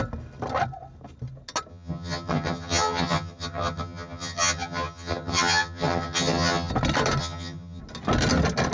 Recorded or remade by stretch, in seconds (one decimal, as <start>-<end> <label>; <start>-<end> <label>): 0.0-1.7 recorded; 1.7-6.7 remade; 6.7-7.2 recorded; 7.2-7.8 remade; 7.8-8.7 recorded